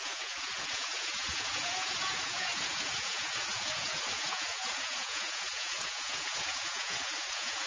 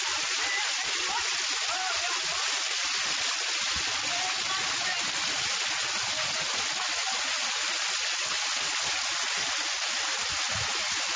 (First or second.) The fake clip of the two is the first